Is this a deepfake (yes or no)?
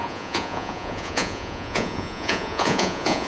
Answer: yes